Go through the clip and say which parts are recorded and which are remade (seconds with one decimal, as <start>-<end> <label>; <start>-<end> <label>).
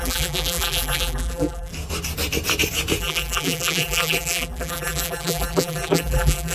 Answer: 0.0-1.7 remade; 1.7-3.0 recorded; 3.0-6.5 remade